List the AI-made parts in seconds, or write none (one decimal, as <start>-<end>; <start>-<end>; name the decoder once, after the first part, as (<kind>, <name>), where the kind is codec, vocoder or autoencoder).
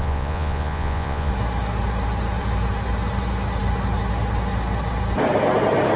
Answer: 0.0-1.3 (vocoder, Vocos)